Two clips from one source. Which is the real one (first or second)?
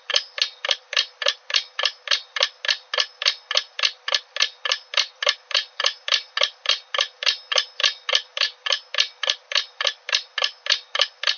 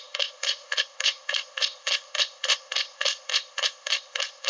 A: first